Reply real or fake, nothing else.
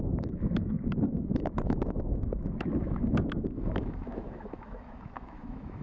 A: fake